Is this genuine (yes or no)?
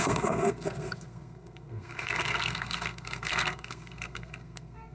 no